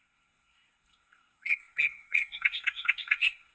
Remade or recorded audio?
remade